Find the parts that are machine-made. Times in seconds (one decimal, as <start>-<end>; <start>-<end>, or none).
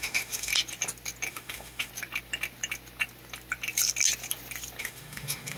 0.0-0.5; 1.3-1.9; 4.8-5.6